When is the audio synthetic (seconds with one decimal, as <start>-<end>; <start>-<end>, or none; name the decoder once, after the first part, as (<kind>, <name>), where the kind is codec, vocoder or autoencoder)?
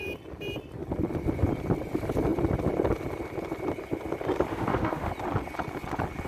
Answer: 4.5-5.1 (autoencoder, DAC-VAE)